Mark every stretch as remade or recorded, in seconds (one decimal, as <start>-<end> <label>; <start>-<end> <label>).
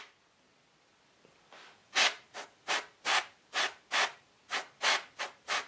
0.0-5.7 recorded